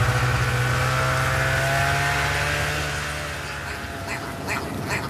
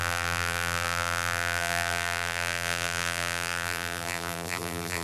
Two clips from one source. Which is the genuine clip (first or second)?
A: first